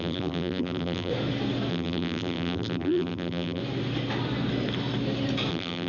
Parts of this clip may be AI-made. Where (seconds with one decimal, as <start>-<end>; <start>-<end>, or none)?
0.0-1.1; 1.7-3.6; 5.5-5.9